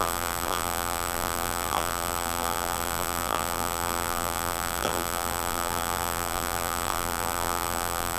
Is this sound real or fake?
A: fake